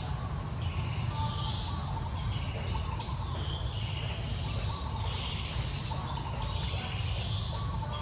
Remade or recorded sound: recorded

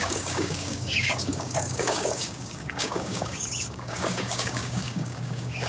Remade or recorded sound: remade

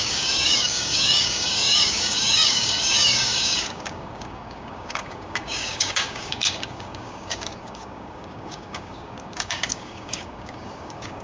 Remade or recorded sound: remade